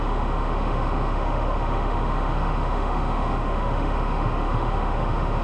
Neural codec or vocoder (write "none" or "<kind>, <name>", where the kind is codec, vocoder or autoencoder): autoencoder, DAC-VAE